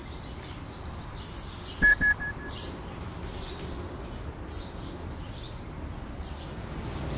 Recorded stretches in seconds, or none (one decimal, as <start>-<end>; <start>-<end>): 0.0-1.7